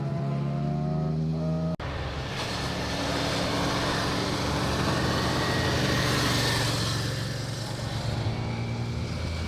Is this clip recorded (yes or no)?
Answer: yes